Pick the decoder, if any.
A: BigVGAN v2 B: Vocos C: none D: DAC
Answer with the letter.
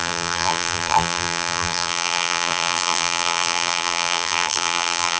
A